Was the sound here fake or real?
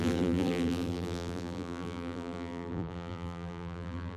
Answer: fake